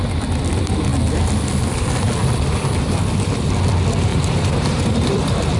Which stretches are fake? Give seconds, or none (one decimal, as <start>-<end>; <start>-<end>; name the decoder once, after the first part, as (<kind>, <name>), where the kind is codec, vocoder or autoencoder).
4.1-5.6 (vocoder, BigVGAN v2)